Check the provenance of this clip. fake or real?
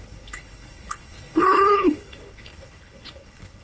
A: fake